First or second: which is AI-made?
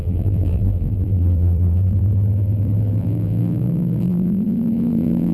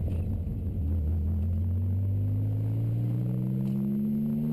first